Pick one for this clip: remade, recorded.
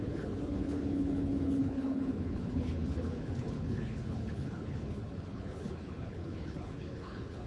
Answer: remade